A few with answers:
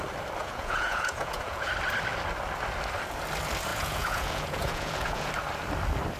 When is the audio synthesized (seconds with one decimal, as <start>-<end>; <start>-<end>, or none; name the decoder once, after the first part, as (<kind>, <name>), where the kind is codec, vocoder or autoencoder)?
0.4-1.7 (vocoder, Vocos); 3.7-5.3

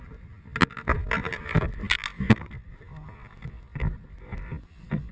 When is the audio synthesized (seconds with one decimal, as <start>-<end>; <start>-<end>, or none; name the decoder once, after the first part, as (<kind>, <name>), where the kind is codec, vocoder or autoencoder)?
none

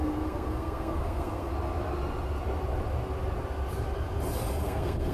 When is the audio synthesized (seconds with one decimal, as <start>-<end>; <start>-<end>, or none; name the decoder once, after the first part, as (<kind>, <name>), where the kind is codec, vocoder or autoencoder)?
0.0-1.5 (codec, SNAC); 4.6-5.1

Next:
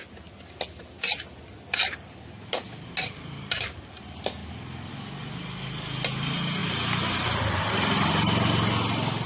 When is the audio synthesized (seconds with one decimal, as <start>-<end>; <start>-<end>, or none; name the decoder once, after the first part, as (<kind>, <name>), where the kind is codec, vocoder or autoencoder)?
none